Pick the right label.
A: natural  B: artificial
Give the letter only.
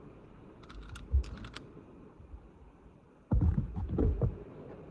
A